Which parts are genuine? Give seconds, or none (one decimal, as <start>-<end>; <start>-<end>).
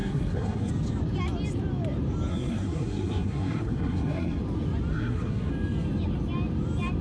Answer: 0.7-2.3; 4.4-4.9; 5.5-7.0